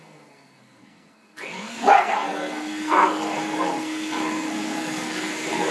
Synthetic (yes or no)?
yes